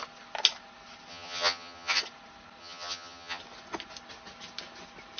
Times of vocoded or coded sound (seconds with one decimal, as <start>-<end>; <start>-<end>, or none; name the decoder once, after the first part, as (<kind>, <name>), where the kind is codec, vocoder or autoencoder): 1.1-2.0 (vocoder, HiFi-GAN); 2.6-3.4